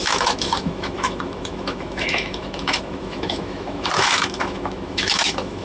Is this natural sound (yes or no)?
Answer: no